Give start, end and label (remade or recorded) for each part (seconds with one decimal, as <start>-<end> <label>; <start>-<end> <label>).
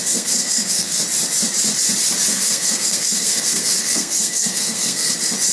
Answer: 0.0-1.0 remade; 1.0-2.3 recorded; 2.3-5.1 remade; 5.1-5.5 recorded